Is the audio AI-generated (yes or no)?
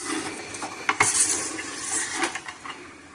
no